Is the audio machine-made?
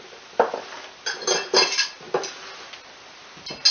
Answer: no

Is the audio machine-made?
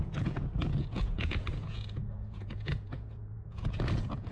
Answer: yes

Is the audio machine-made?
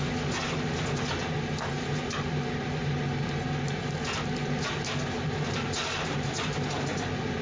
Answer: no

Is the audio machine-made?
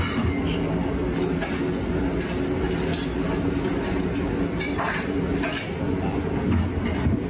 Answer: no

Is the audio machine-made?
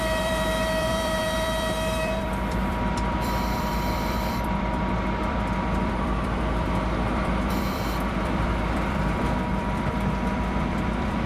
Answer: yes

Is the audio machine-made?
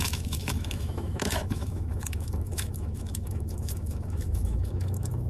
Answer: yes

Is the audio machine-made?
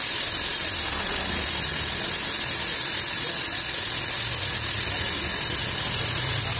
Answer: no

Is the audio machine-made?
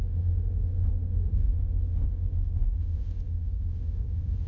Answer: yes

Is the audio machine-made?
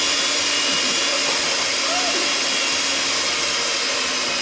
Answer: no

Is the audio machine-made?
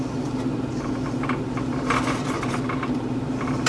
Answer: no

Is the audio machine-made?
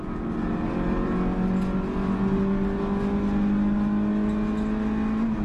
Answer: no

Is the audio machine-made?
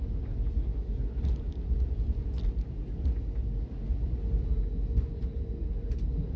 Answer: no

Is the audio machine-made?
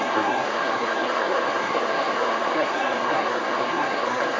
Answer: yes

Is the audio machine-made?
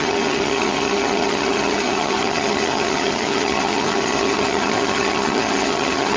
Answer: yes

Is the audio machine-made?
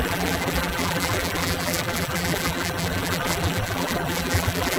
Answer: yes